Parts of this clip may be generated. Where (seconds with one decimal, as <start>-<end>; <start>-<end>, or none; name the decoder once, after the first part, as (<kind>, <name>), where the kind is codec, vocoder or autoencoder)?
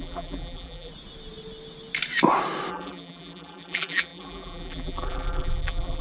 0.0-0.9 (vocoder, BigVGAN v2); 2.7-6.0